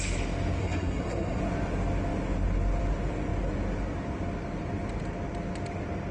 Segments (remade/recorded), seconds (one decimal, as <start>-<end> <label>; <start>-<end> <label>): 0.0-0.6 recorded; 0.6-1.4 remade; 1.4-6.1 recorded